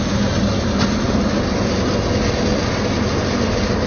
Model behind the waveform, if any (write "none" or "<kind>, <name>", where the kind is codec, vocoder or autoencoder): vocoder, BigVGAN v2